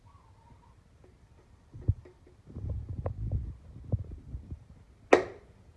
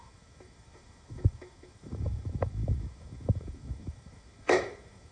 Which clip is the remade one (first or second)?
second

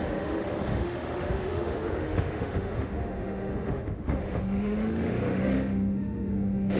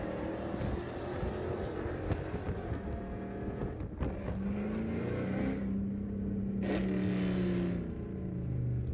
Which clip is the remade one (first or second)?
first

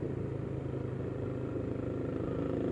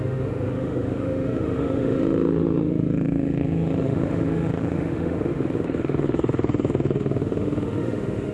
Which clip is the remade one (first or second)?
second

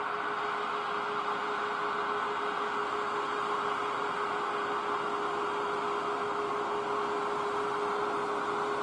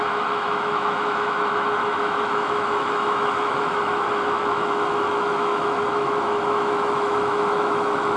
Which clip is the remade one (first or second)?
second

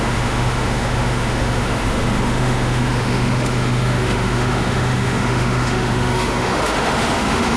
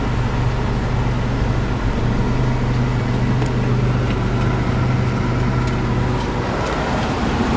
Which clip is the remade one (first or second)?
first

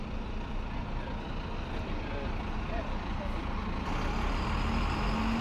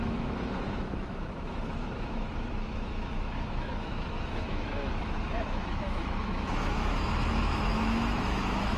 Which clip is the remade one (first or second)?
second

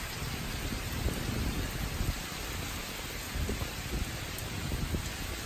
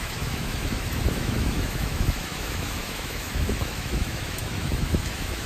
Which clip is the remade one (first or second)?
second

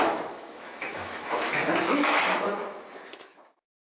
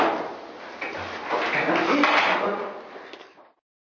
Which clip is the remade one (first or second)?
first